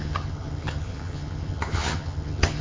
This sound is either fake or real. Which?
fake